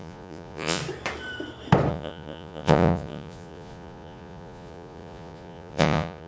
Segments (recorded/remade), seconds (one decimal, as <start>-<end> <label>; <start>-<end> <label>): 0.0-0.8 remade; 0.8-1.9 recorded; 1.9-6.3 remade